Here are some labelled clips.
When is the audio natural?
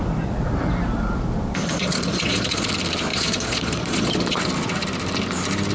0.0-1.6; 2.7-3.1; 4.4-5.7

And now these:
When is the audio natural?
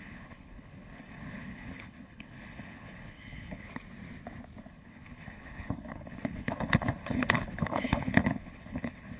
3.7-4.6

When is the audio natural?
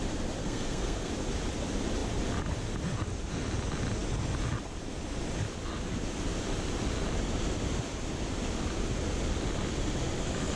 0.0-0.4; 1.1-10.6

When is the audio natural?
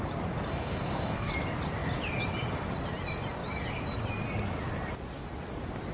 0.0-0.5; 1.3-5.9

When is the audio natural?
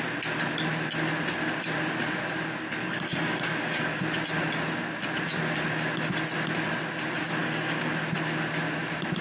0.0-2.8; 4.0-7.4; 7.9-9.2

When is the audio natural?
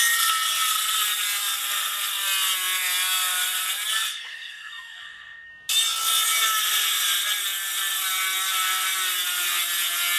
0.0-4.1; 5.5-10.2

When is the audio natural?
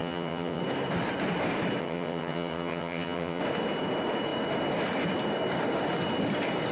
0.6-1.8; 3.4-6.7